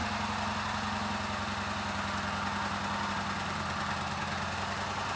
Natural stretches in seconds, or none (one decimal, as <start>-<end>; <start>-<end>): 0.0-5.2